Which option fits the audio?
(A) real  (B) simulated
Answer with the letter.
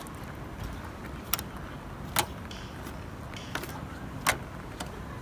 A